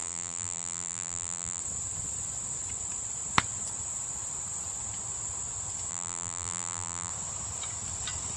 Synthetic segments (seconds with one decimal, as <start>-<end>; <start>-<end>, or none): 0.0-1.6; 5.9-7.1